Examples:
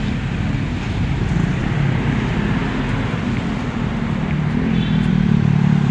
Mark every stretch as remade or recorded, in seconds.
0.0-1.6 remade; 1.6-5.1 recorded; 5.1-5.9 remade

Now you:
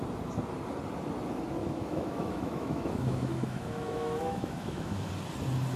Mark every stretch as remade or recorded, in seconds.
0.0-1.6 recorded; 1.6-5.1 remade; 5.1-5.8 recorded

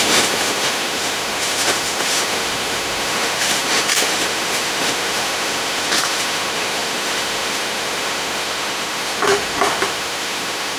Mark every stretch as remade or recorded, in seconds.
0.0-10.8 remade

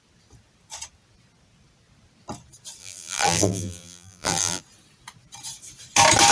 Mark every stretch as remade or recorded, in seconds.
0.0-2.8 recorded; 2.8-4.6 remade; 4.6-6.3 recorded

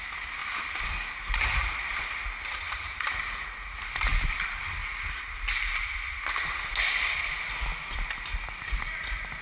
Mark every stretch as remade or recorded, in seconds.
0.0-0.4 recorded; 0.4-3.4 remade; 3.4-4.1 recorded; 4.1-5.7 remade; 5.7-9.4 recorded